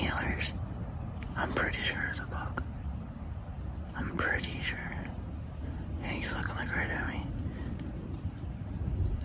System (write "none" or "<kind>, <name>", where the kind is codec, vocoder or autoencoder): vocoder, BigVGAN v2